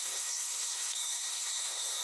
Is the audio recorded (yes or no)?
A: no